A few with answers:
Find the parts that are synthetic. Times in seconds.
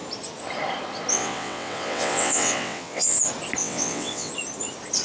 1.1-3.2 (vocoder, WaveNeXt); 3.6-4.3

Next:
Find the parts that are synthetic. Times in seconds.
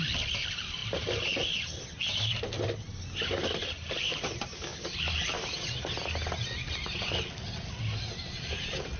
0.0-0.8 (vocoder, BigVGAN v2); 1.4-4.7; 8.0-9.0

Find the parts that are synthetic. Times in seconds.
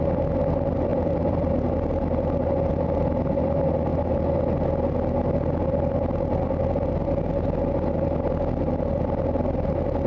0.9-1.7 (vocoder, BigVGAN v2)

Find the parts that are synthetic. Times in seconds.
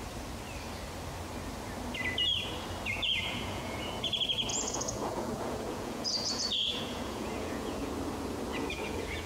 2.9-3.9 (vocoder, Vocos); 4.5-7.9; 8.5-9.3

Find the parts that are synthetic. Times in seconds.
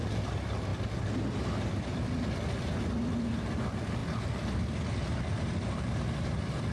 4.0-6.7 (vocoder, BigVGAN v2)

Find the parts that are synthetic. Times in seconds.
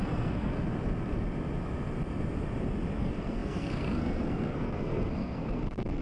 0.0-0.5 (codec, SNAC); 3.0-6.0